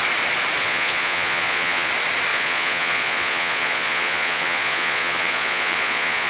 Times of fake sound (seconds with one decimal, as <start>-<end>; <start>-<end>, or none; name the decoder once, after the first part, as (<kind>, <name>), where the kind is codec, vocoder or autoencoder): 0.6-1.9 (vocoder, Vocos); 2.3-6.3